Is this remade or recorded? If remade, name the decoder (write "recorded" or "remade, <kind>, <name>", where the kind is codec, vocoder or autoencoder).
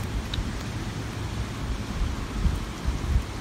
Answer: recorded